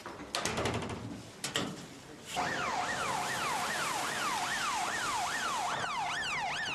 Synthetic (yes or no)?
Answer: no